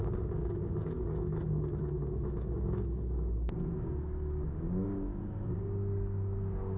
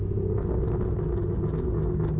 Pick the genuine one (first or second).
second